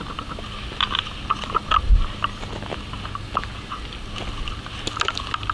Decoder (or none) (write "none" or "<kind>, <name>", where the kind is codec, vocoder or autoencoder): none